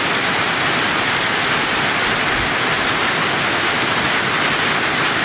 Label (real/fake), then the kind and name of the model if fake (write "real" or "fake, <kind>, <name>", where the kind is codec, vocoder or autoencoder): real